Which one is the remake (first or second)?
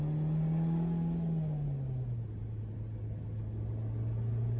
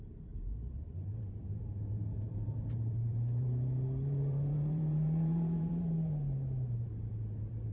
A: second